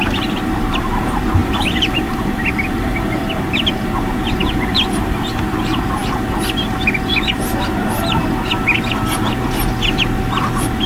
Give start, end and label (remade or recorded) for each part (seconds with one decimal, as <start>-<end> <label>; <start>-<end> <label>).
0.0-1.4 recorded; 1.4-3.3 remade; 3.3-4.4 recorded; 4.4-5.4 remade; 5.4-10.9 recorded